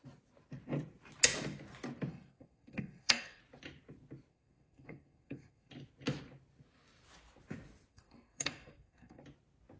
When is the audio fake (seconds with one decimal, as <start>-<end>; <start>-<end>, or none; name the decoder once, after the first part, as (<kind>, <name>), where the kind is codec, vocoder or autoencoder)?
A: 2.1-3.4 (codec, SNAC); 4.3-5.7; 7.9-9.2